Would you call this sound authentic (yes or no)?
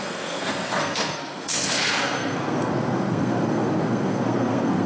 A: no